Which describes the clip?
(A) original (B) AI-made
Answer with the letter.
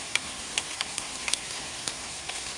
B